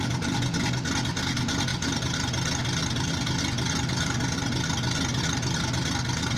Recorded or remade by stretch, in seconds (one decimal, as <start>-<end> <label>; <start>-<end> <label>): 0.0-6.4 recorded